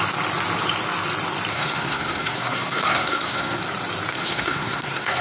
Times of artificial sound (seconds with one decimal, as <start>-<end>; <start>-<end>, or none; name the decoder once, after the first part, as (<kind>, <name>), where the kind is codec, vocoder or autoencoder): 1.5-3.6 (codec, SNAC); 4.1-5.2